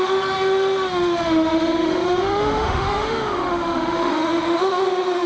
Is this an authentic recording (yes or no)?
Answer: no